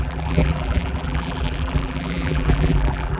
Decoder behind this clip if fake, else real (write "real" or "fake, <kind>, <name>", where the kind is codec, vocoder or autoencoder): fake, vocoder, BigVGAN v2